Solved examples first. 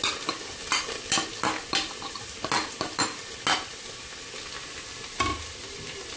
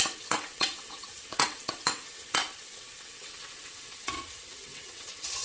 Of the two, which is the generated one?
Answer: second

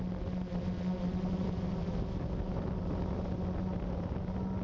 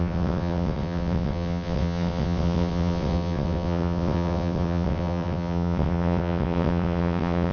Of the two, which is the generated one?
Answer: second